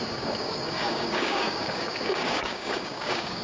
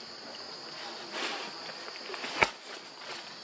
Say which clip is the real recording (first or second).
second